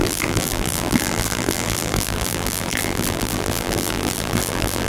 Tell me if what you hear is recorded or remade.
remade